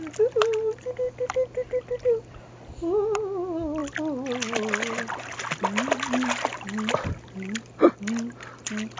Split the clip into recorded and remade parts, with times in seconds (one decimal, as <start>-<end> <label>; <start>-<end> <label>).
0.0-9.0 recorded